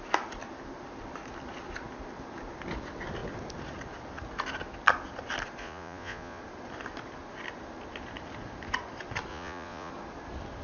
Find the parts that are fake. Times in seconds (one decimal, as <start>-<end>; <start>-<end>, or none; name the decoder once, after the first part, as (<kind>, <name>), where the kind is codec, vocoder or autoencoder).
5.6-6.4 (vocoder, Vocos); 9.3-9.9